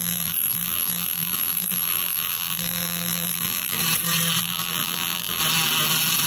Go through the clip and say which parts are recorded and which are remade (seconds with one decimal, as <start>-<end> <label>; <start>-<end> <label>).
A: 0.0-3.8 remade; 3.8-4.4 recorded; 4.4-5.4 remade; 5.4-6.3 recorded